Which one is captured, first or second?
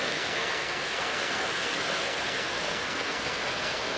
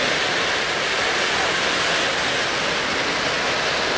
second